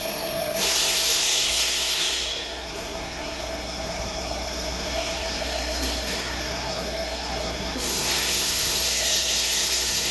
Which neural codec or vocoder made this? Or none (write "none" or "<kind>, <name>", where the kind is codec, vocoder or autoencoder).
codec, SNAC